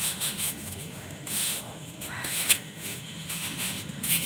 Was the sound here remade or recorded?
remade